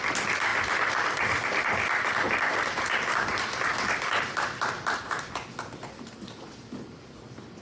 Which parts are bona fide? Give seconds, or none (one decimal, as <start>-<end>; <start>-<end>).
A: 0.0-7.6